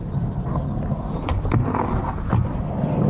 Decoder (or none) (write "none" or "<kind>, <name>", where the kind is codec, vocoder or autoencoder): none